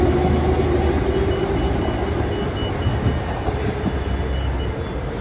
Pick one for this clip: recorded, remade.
recorded